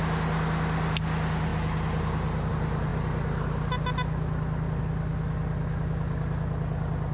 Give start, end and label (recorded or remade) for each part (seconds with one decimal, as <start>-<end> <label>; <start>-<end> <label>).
0.0-7.1 recorded